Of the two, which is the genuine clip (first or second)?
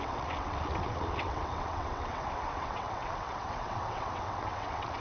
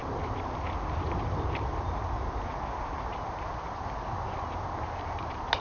second